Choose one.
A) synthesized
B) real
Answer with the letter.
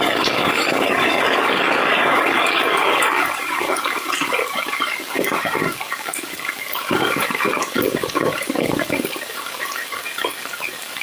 A